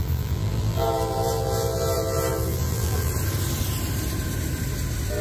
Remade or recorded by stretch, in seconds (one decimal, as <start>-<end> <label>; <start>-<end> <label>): 0.0-3.1 remade; 3.1-5.2 recorded

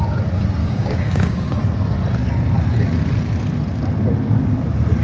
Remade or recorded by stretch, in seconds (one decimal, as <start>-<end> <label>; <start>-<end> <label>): 0.0-0.6 recorded; 0.6-1.6 remade; 1.6-5.0 recorded